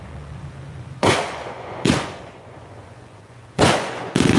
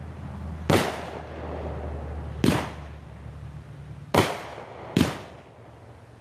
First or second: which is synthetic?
first